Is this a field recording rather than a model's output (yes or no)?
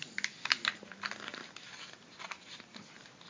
yes